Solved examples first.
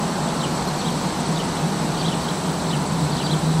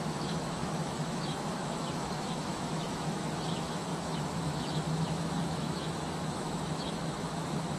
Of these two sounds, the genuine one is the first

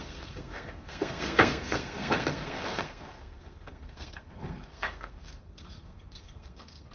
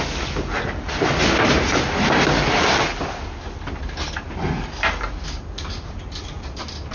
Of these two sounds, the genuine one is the second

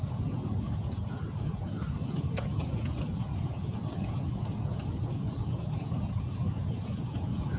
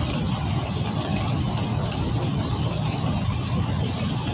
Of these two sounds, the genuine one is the second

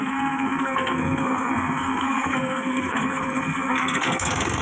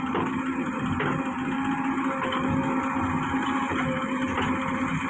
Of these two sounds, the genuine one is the second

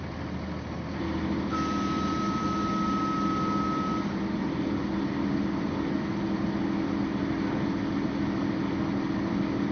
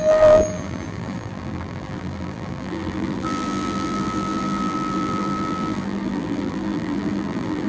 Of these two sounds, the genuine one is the first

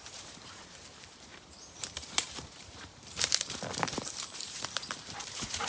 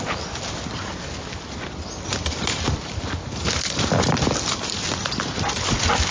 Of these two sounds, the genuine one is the second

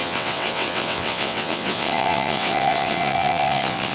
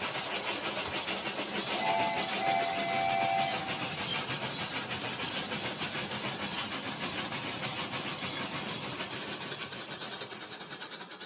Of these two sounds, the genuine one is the second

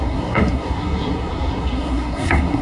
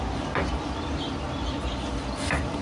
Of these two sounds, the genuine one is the second